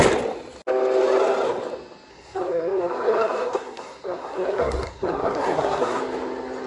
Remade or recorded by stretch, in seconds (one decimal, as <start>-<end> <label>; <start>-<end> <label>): 0.0-2.1 recorded; 2.1-6.0 remade; 6.0-6.7 recorded